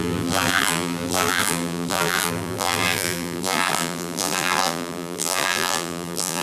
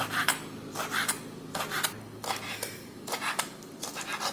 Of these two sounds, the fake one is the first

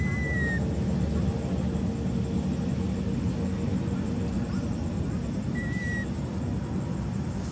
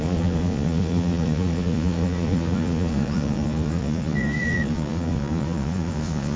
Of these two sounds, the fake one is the second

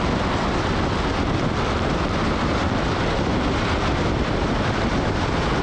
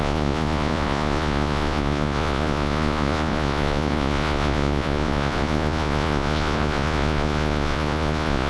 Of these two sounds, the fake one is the second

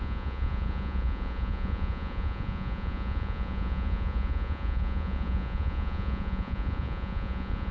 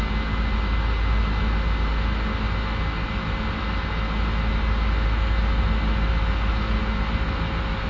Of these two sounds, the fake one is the first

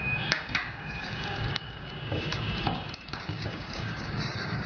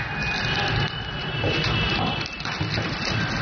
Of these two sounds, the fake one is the first